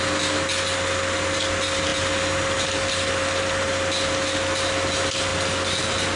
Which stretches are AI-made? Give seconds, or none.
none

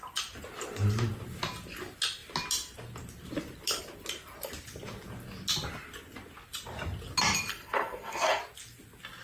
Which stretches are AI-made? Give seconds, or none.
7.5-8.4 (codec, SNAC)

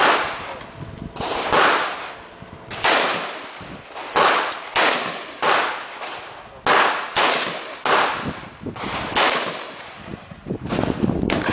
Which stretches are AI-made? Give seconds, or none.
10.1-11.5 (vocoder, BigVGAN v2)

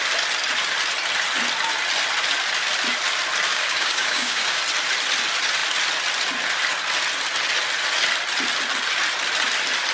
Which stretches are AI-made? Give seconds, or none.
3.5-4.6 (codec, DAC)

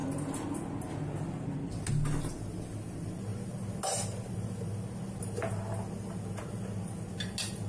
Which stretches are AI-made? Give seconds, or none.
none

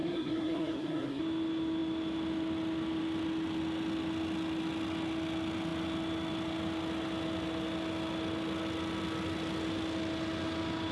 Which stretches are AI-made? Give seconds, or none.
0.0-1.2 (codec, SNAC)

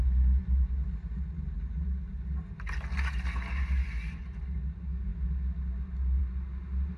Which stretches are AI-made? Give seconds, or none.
none